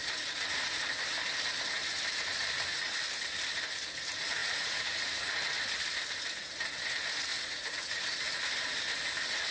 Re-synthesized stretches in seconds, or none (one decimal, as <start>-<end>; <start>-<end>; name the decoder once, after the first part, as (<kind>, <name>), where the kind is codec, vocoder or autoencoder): 4.4-5.3 (vocoder, Vocos); 7.3-8.0